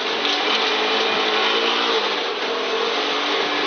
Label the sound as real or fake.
real